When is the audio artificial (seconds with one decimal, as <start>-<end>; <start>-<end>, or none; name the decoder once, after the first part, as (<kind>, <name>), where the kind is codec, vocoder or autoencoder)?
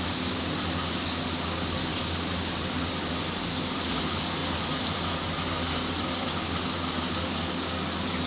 1.9-3.9 (vocoder, BigVGAN v2)